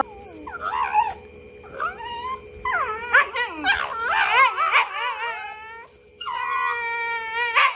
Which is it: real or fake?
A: real